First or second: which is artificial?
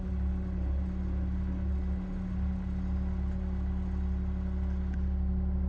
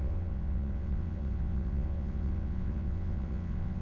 second